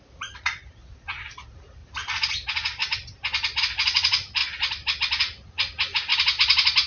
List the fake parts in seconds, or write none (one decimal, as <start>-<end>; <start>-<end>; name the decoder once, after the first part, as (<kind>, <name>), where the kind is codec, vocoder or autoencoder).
0.0-1.8 (vocoder, Vocos); 2.3-2.8; 3.6-4.4; 5.2-6.1

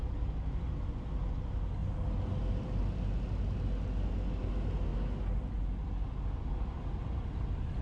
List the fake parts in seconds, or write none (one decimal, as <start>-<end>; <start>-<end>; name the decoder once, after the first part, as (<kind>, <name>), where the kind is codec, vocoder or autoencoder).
none

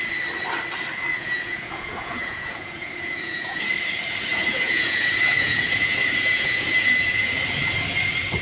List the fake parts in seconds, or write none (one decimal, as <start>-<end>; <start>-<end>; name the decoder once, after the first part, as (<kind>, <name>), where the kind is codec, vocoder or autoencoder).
1.1-3.6 (vocoder, Vocos); 4.3-7.3